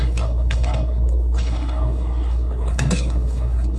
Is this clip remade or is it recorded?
remade